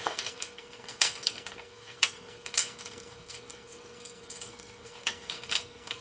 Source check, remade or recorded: remade